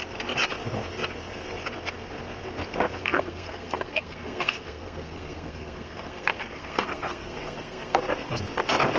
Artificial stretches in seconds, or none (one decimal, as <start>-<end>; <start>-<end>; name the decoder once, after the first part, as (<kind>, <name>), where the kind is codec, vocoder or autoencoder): 3.0-8.0 (codec, SNAC)